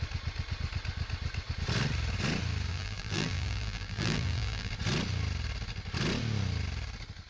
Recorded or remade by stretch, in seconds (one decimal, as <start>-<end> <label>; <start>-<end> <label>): 0.0-2.7 recorded; 2.7-4.7 remade; 4.7-7.3 recorded